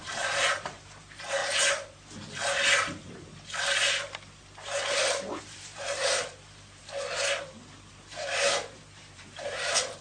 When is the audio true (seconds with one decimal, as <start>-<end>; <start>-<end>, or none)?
1.4-5.4; 6.8-7.9